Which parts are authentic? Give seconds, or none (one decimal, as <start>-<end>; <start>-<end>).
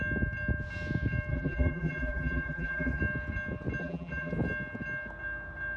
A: 0.0-1.3; 3.0-3.8; 4.3-5.8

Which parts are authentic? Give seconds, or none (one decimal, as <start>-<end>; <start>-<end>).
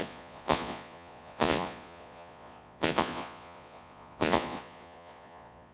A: none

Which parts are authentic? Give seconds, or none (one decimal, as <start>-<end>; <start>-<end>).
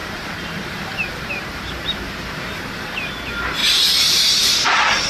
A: 3.1-3.6; 4.5-5.1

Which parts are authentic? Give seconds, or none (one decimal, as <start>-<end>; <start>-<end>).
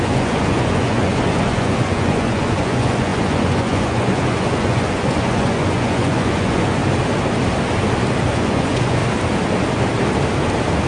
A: 6.8-8.3; 9.0-10.9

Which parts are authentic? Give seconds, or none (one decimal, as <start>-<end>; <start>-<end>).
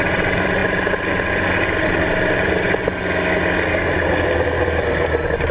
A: 0.6-3.9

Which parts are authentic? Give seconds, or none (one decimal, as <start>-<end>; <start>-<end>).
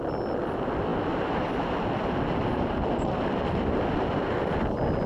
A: 0.0-5.1